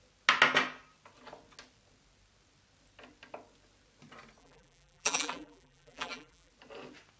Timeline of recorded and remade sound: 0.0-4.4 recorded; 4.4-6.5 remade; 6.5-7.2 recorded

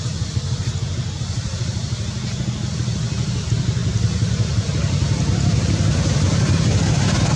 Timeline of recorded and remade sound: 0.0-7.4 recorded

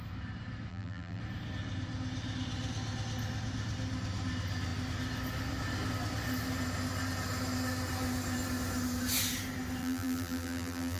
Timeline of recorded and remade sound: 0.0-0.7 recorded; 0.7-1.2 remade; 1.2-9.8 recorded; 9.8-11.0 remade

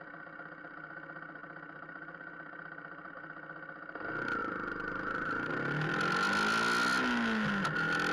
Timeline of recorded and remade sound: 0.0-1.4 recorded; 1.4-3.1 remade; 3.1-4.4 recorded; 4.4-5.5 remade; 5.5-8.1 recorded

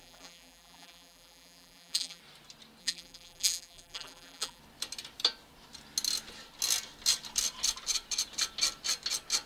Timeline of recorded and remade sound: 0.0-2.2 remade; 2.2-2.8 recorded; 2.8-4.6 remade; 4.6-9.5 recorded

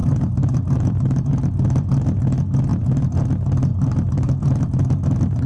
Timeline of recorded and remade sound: 0.0-1.3 remade; 1.3-2.7 recorded; 2.7-3.2 remade; 3.2-3.7 recorded; 3.7-4.7 remade; 4.7-5.5 recorded